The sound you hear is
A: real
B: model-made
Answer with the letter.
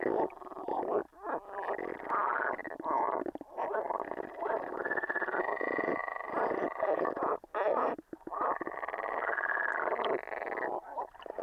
B